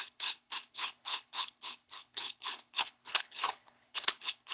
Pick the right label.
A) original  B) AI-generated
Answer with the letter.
B